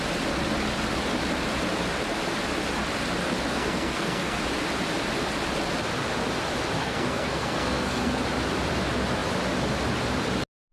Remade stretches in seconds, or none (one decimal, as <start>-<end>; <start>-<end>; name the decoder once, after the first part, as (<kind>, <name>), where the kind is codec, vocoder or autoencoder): 3.5-4.4 (codec, SNAC); 6.8-8.2